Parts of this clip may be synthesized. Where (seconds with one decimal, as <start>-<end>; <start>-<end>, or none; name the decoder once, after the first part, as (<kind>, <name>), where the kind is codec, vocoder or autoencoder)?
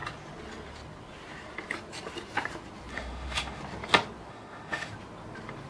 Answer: 2.9-3.6 (autoencoder, DAC-VAE); 4.3-4.9